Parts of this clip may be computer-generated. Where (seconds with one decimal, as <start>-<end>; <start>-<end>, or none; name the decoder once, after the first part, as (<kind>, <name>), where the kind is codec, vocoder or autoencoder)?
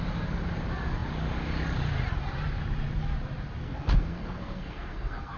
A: 3.6-5.4 (codec, SNAC)